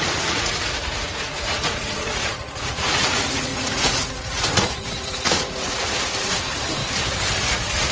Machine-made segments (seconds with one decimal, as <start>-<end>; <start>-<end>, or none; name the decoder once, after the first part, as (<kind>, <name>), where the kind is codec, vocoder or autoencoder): 0.0-6.8 (vocoder, Vocos); 7.4-7.9